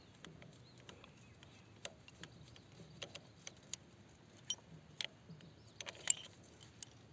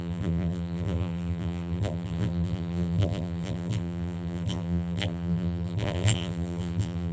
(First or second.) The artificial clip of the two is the second